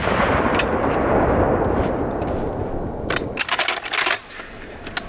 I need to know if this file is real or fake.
real